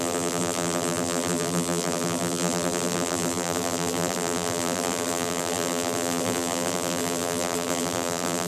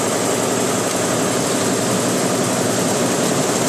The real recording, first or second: second